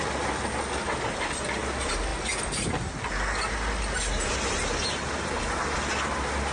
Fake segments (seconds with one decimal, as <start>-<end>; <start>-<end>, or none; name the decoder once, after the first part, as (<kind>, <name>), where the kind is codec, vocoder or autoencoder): none